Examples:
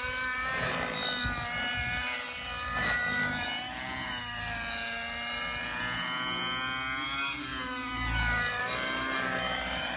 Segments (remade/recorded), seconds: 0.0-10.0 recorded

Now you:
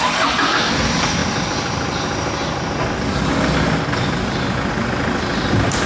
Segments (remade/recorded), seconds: 0.0-5.9 recorded

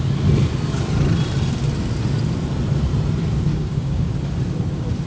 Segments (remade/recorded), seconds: 0.0-3.5 recorded; 3.5-4.1 remade; 4.1-5.1 recorded

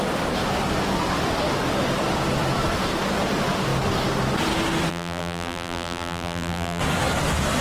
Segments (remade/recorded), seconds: 0.0-4.9 recorded; 4.9-6.8 remade; 6.8-7.6 recorded

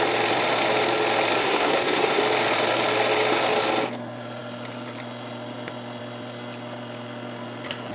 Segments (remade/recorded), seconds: 0.0-1.4 recorded; 1.4-2.2 remade; 2.2-7.9 recorded